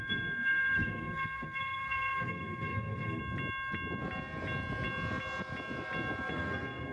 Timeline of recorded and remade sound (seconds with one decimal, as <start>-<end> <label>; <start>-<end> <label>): 0.0-3.2 remade; 3.2-6.3 recorded; 6.3-6.9 remade